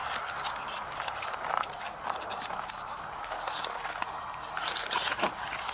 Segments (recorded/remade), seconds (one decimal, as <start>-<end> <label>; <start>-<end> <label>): 0.0-5.7 recorded